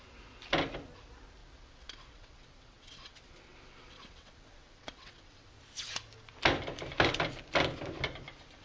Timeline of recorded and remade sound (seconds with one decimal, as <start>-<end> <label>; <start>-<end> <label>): 0.0-1.4 recorded; 1.4-5.5 remade; 5.5-8.6 recorded